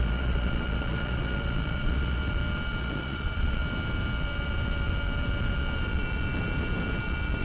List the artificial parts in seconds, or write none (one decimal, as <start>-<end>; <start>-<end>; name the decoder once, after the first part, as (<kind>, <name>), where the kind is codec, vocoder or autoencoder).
0.0-2.2 (vocoder, Vocos); 2.8-3.6